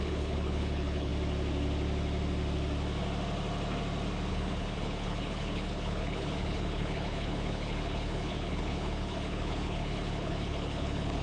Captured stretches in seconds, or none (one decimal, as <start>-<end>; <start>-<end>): 1.1-4.3